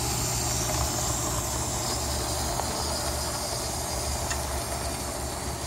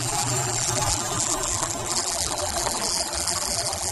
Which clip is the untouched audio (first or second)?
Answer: first